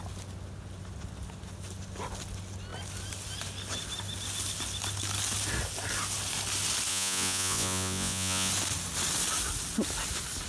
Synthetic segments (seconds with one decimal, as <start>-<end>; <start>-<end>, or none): 6.9-8.5